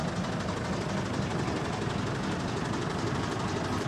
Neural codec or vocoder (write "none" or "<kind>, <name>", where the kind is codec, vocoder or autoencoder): none